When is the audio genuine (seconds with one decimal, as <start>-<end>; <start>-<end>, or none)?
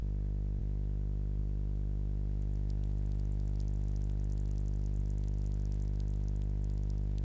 0.6-7.2